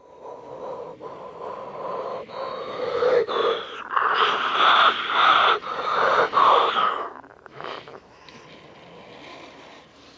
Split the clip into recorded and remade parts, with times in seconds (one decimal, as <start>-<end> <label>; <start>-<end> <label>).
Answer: 0.0-2.1 recorded; 2.1-3.3 remade; 3.3-6.8 recorded; 6.8-8.4 remade; 8.4-10.2 recorded